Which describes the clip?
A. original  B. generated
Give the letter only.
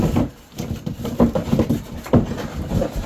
A